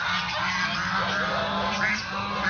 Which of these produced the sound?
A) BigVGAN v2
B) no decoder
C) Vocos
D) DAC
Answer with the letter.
B